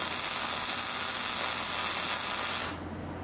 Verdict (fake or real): real